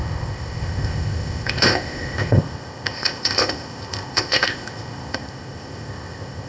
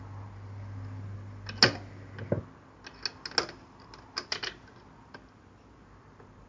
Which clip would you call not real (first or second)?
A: first